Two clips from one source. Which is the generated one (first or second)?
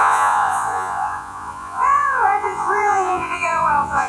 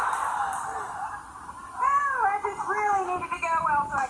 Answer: first